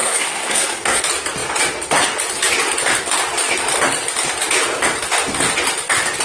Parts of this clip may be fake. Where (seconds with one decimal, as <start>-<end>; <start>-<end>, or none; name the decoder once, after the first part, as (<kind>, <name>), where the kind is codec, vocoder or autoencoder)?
0.0-1.0 (codec, SNAC)